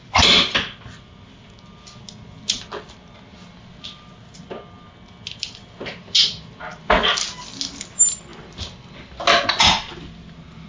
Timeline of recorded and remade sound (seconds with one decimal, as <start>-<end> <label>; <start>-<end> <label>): 0.0-10.7 recorded